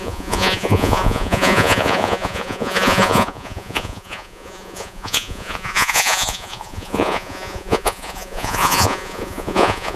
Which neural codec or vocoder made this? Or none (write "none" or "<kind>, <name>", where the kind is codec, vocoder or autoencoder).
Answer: vocoder, Vocos